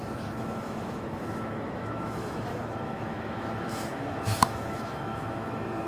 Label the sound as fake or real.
fake